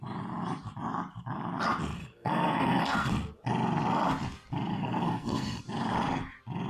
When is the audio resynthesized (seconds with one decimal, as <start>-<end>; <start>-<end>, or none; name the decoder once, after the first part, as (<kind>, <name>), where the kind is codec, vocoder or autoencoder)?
2.0-3.1 (codec, SNAC); 4.7-5.6